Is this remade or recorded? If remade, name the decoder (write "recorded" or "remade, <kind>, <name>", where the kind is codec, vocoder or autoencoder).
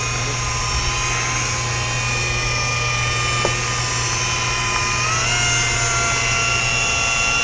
recorded